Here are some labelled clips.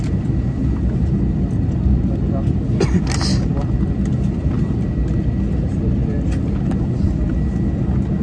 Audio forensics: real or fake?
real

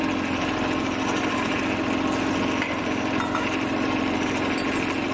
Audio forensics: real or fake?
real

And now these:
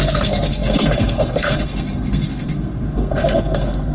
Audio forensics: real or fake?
fake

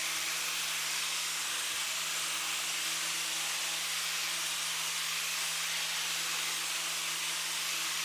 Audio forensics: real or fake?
real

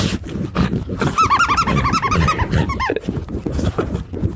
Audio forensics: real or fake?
real